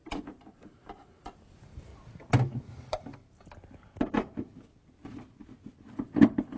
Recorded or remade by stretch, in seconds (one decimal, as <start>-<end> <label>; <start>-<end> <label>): 0.0-1.9 remade; 1.9-5.9 recorded; 5.9-6.6 remade